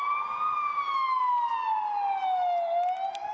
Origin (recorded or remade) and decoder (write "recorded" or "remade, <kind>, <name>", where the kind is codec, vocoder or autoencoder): recorded